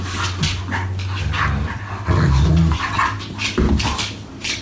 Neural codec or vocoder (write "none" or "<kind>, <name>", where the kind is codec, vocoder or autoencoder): none